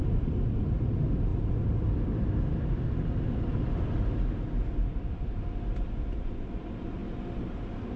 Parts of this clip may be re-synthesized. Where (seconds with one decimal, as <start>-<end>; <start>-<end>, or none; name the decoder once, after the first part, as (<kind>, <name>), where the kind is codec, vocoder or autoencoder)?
0.0-7.0 (vocoder, BigVGAN v2); 7.6-8.0